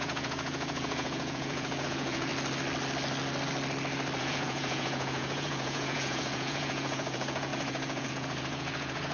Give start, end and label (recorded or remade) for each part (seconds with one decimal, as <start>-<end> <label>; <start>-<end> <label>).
0.0-2.3 remade; 2.3-4.2 recorded; 4.2-9.1 remade